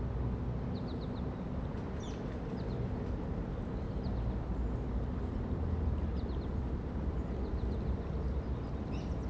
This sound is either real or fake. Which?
real